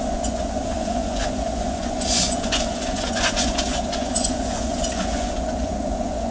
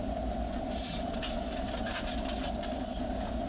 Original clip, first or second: second